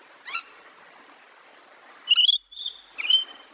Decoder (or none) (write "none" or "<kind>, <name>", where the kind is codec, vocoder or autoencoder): none